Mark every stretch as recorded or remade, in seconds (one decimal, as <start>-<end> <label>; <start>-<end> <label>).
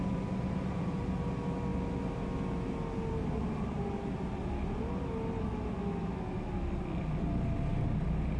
0.0-8.4 recorded